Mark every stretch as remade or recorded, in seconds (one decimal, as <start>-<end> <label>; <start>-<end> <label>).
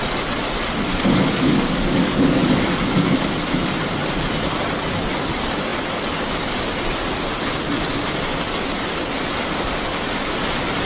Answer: 0.0-0.9 recorded; 0.9-3.3 remade; 3.3-10.9 recorded